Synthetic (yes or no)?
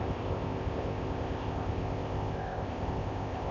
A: yes